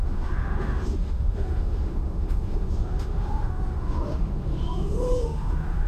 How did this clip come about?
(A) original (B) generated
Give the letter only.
B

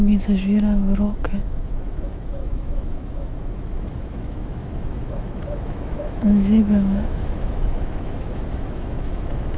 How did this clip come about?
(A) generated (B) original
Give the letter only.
A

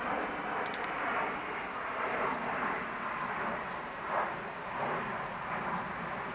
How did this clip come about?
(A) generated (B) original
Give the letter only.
B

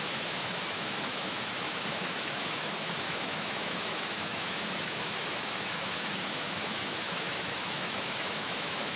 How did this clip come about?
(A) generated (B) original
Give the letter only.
A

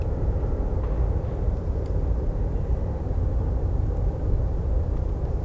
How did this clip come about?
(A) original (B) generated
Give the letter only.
A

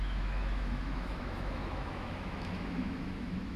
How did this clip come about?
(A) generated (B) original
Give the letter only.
A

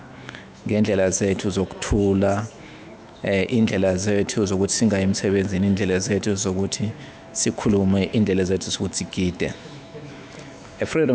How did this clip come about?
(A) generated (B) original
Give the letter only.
A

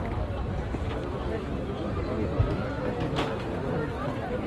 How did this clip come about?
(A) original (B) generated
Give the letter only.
A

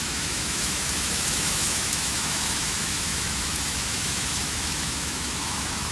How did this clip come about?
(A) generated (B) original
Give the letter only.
A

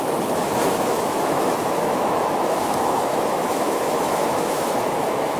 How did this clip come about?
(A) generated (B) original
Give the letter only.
A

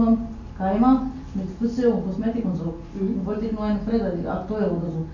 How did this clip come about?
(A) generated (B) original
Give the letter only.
B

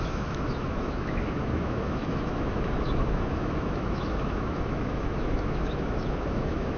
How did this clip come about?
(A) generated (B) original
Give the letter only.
A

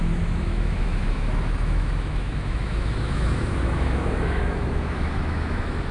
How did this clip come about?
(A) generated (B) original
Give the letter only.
A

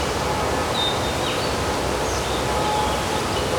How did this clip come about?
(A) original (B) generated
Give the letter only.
A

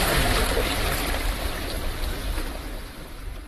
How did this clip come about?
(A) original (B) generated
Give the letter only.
A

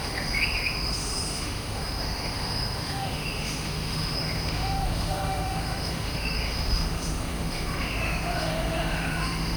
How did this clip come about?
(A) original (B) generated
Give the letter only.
B